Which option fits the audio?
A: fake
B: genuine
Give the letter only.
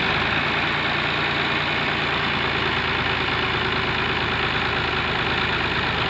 B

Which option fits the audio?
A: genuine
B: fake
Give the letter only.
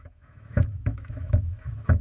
B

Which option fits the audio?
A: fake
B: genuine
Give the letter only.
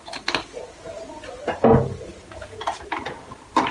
B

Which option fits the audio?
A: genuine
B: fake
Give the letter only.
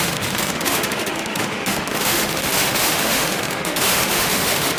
B